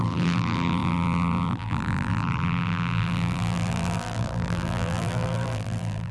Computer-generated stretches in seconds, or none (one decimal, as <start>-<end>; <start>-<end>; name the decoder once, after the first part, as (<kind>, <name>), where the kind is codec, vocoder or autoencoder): 0.0-6.1 (vocoder, BigVGAN v2)